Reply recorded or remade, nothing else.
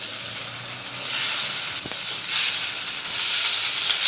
recorded